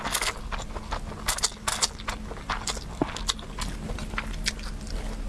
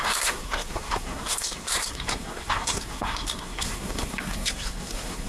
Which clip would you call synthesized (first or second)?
second